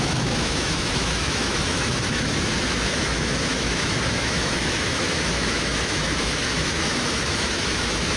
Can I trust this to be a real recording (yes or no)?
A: no